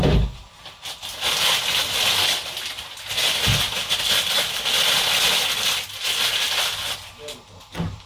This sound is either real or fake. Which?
real